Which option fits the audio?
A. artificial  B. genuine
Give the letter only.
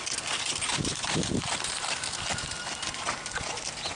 B